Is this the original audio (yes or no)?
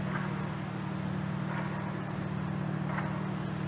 yes